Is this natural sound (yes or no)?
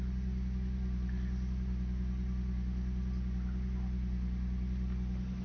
yes